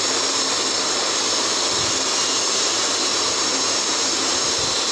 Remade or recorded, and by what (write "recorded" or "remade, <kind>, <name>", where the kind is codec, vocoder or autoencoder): recorded